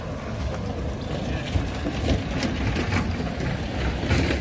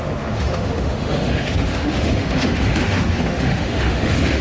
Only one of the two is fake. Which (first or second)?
second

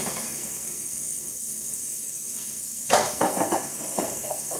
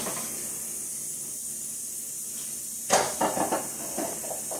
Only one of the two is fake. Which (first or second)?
first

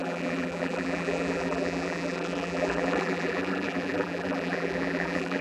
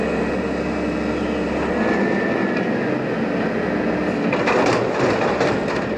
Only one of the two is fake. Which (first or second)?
first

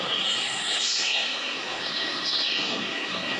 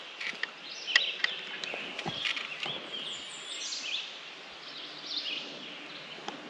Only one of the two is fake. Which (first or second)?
first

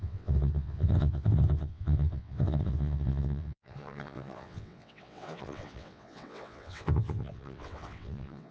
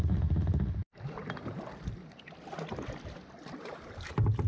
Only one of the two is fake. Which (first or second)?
first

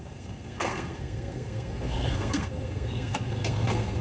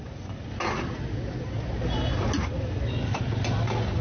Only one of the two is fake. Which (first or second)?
first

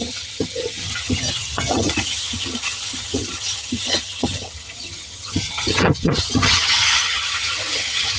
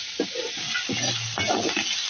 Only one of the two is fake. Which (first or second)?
first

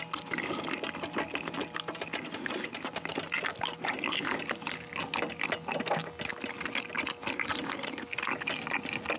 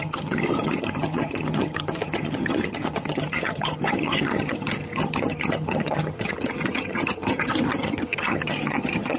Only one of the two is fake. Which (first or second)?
second